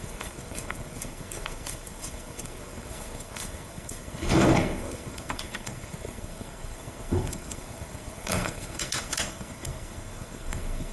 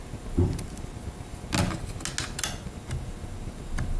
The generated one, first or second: first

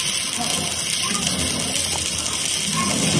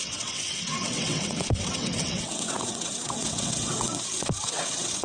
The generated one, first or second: second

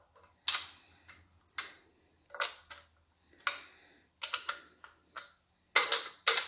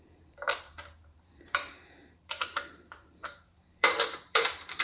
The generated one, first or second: second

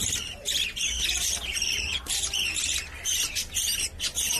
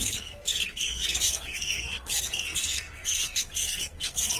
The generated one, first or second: second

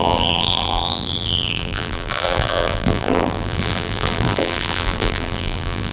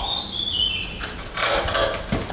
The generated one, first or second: first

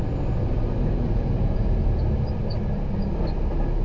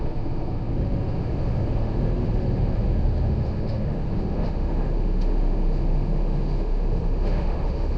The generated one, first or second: second